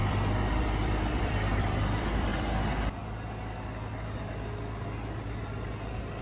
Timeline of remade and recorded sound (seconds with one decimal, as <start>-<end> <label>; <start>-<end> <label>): 0.0-2.3 remade; 2.3-6.2 recorded